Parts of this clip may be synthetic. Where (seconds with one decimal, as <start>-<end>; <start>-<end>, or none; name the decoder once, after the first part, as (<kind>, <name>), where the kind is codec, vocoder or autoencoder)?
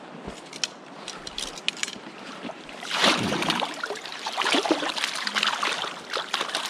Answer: 1.8-4.9 (vocoder, BigVGAN v2)